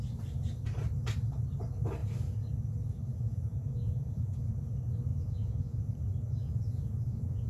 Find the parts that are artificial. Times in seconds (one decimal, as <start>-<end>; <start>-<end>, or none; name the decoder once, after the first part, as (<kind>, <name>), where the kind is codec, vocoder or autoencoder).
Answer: 3.1-4.5 (vocoder, Vocos); 5.1-5.8; 6.4-7.5